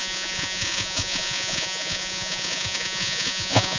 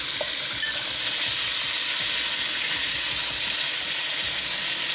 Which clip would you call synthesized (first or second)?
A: first